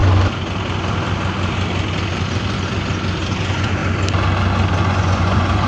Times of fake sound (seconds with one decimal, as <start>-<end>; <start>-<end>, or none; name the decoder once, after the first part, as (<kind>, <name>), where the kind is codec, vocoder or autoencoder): 3.4-3.8 (vocoder, Vocos); 4.8-5.7